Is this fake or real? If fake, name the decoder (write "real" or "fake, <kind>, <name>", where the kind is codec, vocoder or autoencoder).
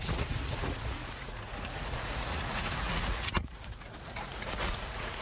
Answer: fake, vocoder, Vocos